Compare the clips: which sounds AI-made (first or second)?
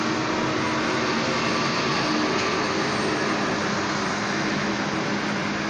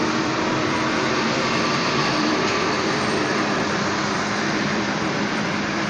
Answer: second